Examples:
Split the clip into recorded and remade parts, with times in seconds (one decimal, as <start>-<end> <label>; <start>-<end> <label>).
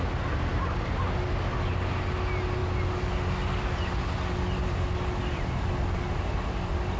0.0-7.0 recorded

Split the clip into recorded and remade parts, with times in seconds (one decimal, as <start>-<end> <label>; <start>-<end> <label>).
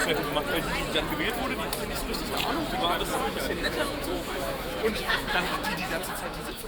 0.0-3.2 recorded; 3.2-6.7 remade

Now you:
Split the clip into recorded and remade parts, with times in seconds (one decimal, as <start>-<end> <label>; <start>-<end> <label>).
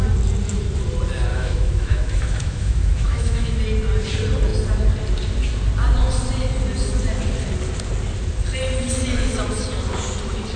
0.0-1.3 recorded; 1.3-3.6 remade; 3.6-10.6 recorded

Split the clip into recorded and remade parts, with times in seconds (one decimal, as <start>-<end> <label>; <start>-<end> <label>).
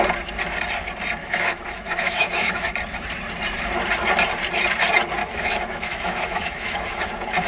0.0-1.2 recorded; 1.2-2.7 remade; 2.7-5.2 recorded; 5.2-7.1 remade; 7.1-7.5 recorded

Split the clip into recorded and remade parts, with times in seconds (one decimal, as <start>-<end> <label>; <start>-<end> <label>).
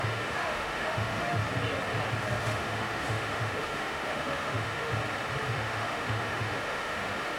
0.0-1.4 remade; 1.4-2.4 recorded; 2.4-4.9 remade; 4.9-5.5 recorded; 5.5-7.4 remade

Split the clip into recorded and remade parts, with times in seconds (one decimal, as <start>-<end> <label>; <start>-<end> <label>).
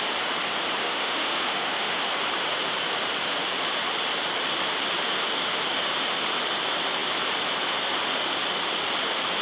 0.0-0.8 recorded; 0.8-2.1 remade; 2.1-9.4 recorded